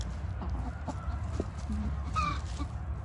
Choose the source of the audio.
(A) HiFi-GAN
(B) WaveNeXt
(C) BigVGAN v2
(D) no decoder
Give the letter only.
D